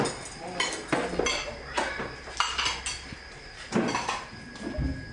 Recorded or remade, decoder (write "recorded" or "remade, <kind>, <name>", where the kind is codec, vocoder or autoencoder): recorded